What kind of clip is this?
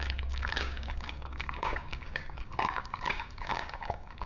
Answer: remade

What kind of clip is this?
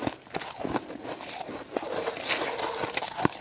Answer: recorded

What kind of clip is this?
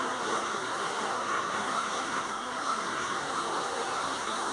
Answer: remade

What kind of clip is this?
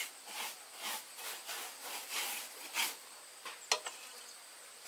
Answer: recorded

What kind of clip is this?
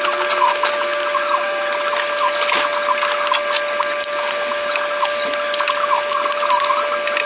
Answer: recorded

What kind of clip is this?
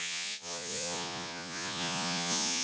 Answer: remade